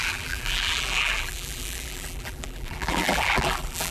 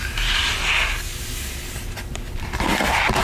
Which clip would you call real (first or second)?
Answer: second